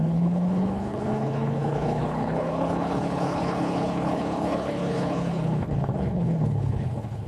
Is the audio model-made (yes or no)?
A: yes